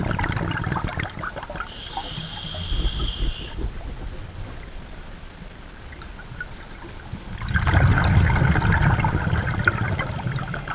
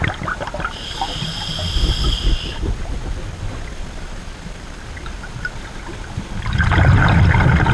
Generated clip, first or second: second